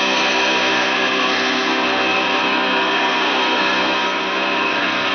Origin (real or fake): fake